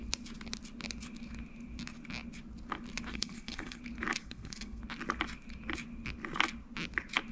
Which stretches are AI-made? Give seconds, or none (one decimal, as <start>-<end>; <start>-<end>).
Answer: 3.1-3.8; 4.2-4.8